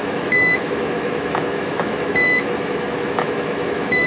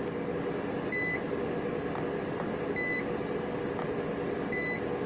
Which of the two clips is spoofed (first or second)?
first